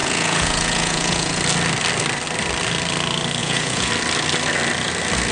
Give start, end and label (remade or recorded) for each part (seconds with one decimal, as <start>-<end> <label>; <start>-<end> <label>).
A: 0.0-1.4 remade; 1.4-3.4 recorded; 3.4-3.9 remade; 3.9-5.3 recorded